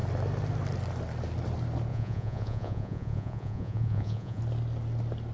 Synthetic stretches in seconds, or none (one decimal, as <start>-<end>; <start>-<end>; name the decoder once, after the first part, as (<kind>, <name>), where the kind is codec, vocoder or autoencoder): 1.9-4.4 (vocoder, Vocos)